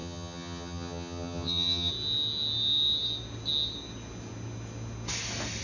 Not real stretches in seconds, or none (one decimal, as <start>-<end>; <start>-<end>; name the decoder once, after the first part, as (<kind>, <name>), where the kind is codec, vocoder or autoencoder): 0.0-1.9 (vocoder, HiFi-GAN)